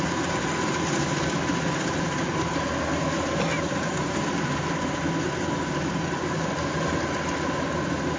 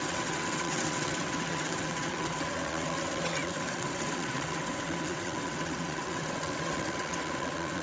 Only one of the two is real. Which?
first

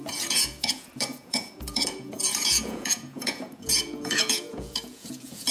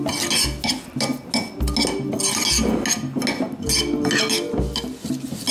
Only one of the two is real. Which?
second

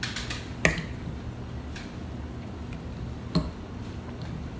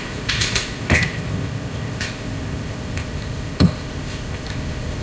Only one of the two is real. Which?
first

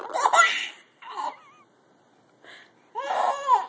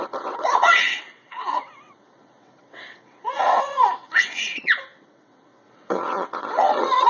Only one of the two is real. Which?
first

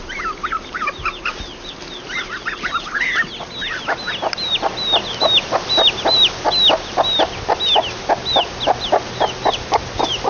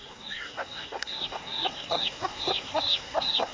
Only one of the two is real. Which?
first